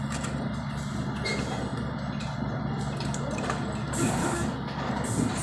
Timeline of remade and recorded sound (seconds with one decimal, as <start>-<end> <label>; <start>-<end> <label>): 0.0-4.2 recorded; 4.2-4.9 remade; 4.9-5.4 recorded